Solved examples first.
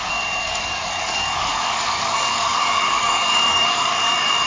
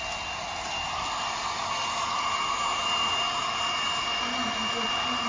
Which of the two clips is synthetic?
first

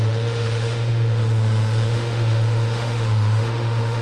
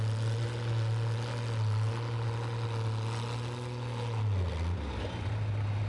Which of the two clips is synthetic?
first